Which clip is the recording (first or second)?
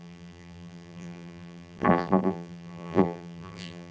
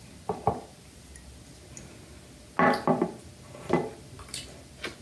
second